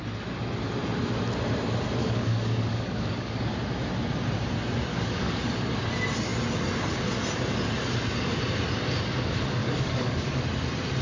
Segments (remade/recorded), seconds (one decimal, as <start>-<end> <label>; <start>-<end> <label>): 0.0-2.0 recorded; 2.0-3.4 remade; 3.4-4.9 recorded; 4.9-5.4 remade; 5.4-9.6 recorded; 9.6-10.4 remade; 10.4-11.0 recorded